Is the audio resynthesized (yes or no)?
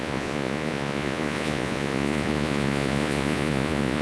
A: yes